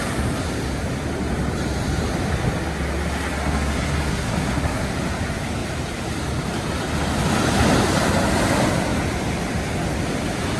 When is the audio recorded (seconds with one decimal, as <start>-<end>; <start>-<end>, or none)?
0.0-3.3; 4.9-10.6